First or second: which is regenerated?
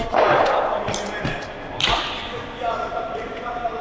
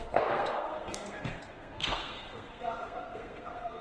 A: second